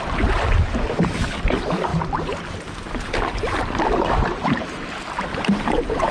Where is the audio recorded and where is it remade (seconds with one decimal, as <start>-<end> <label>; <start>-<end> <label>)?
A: 0.0-6.1 recorded